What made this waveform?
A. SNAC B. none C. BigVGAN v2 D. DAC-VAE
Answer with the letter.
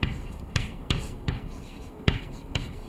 A